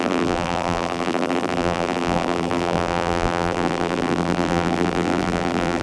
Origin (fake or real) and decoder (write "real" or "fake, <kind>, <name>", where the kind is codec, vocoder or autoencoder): fake, vocoder, BigVGAN v2